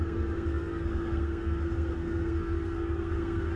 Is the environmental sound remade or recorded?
remade